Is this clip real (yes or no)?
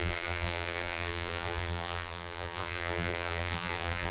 no